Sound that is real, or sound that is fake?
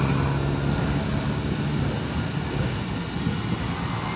real